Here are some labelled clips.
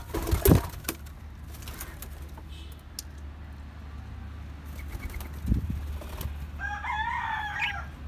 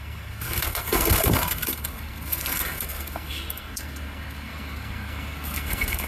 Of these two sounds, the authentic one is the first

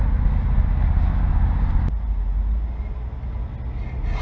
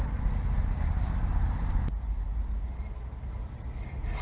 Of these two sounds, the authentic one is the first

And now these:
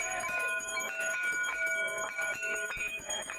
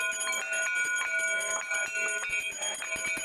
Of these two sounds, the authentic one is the second